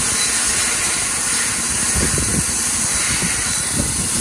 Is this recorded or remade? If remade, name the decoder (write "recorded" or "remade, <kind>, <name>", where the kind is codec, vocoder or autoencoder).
recorded